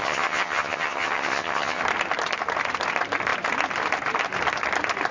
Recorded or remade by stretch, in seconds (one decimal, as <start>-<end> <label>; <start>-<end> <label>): 0.0-1.8 remade; 1.8-5.1 recorded